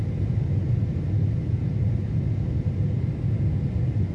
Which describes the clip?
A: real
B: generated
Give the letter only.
A